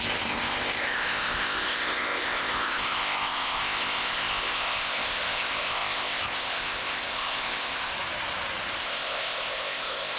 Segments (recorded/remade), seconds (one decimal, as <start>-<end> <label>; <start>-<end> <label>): 0.0-7.9 remade; 7.9-8.8 recorded; 8.8-10.2 remade